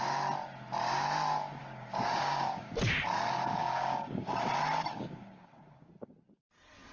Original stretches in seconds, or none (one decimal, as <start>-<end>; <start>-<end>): 0.0-1.6; 2.7-3.6; 4.3-4.9; 5.9-6.9